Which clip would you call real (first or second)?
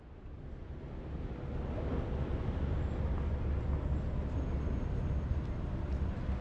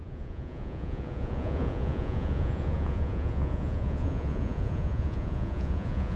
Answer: first